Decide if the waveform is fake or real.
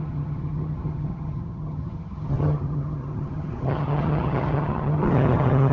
fake